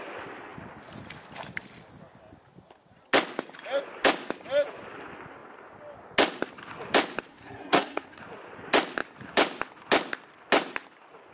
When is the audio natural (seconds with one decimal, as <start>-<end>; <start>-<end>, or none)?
0.0-7.3; 8.2-11.3